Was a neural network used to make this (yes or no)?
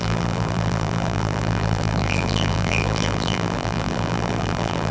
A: yes